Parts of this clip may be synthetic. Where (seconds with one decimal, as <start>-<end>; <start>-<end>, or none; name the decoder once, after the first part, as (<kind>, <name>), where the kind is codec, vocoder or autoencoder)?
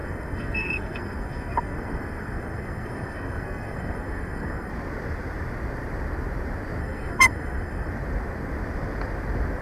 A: 0.0-4.7 (codec, SNAC); 6.8-7.9